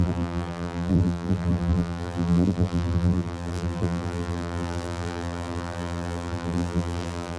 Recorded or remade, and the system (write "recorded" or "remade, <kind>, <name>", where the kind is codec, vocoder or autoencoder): remade, vocoder, BigVGAN v2